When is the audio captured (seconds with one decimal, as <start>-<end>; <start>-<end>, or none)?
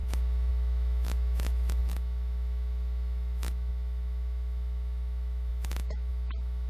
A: none